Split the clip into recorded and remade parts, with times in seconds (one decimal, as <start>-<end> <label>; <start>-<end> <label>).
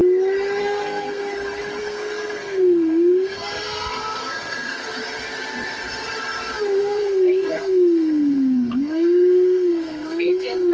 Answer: 0.0-0.6 recorded; 0.6-1.2 remade; 1.2-1.8 recorded; 1.8-4.8 remade; 4.8-6.8 recorded; 6.8-10.7 remade